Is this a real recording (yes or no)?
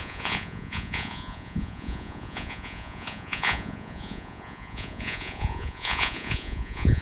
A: no